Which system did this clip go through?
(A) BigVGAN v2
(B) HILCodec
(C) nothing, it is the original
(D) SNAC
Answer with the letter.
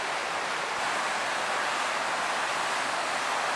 C